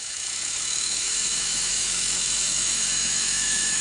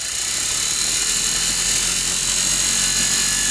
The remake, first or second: first